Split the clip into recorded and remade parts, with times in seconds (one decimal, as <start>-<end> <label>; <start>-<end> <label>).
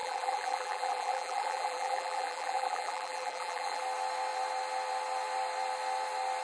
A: 0.0-3.8 remade; 3.8-6.4 recorded